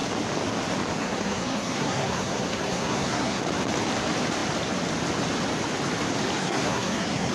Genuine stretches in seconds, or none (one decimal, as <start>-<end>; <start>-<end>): 0.0-1.0; 3.4-6.4